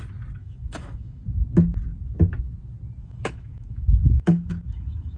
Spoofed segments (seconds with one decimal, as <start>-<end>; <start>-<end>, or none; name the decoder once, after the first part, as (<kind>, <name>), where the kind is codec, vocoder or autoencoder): 0.4-1.2 (autoencoder, DAC-VAE); 3.0-5.2